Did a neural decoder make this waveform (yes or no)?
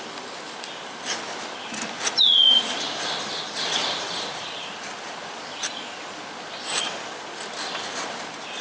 no